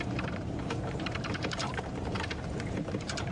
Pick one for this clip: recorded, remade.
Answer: remade